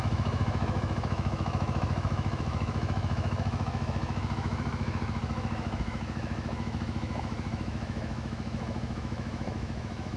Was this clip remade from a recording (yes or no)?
yes